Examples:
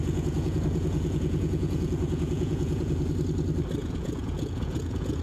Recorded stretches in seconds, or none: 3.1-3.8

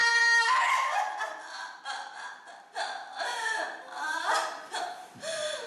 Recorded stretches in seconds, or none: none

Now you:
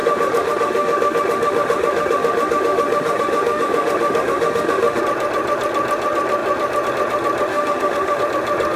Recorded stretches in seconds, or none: 5.0-7.5; 8.2-8.8

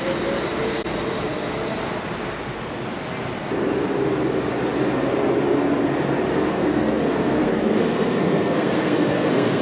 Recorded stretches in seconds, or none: 0.0-6.5